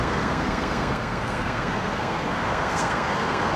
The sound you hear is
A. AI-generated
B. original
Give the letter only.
A